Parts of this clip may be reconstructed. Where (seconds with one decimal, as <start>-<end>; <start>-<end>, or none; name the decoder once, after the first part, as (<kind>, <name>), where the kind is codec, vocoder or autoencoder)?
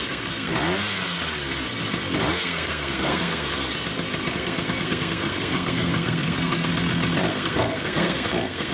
0.0-0.5 (codec, SNAC); 2.3-3.5; 4.3-6.7; 7.3-8.7